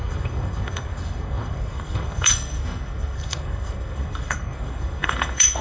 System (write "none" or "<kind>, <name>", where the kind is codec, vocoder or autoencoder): codec, SNAC